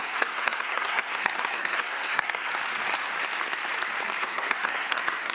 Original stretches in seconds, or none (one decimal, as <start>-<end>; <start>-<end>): 2.5-4.2